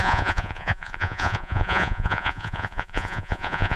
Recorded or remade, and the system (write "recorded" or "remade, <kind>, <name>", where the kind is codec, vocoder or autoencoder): remade, vocoder, Vocos